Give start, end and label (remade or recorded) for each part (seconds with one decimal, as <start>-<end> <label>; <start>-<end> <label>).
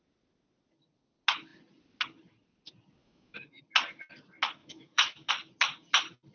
0.0-3.0 recorded; 3.0-3.6 remade; 3.6-4.6 recorded; 4.6-5.3 remade; 5.3-6.3 recorded